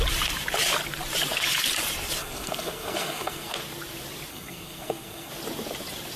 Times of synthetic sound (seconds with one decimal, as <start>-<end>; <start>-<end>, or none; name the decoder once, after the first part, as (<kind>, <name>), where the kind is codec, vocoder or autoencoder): 2.2-3.6 (codec, SNAC); 4.3-5.3